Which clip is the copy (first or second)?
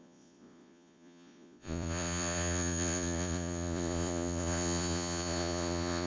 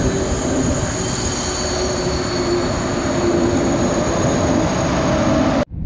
first